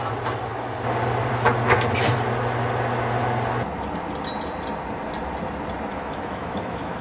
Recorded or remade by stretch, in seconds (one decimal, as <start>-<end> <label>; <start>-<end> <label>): 0.0-5.9 recorded; 5.9-7.0 remade